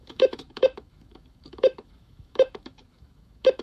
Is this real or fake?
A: fake